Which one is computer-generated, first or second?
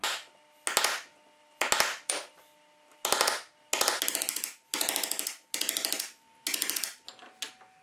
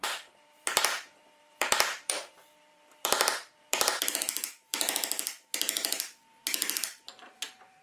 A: second